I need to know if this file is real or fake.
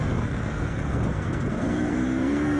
fake